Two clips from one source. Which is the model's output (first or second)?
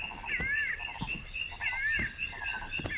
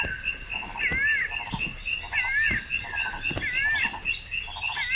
first